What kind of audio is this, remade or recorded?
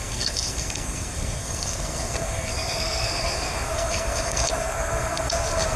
remade